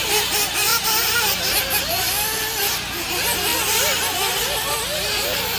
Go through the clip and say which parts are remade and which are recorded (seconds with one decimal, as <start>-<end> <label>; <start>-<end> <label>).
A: 0.0-5.6 recorded